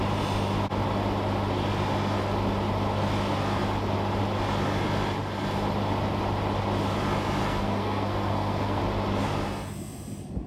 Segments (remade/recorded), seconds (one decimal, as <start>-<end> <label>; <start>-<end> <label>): 0.0-7.4 recorded; 7.4-8.8 remade; 8.8-10.5 recorded